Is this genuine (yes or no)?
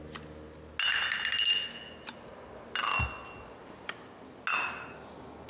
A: yes